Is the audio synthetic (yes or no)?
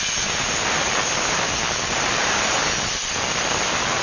no